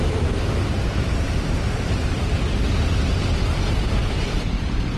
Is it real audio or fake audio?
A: fake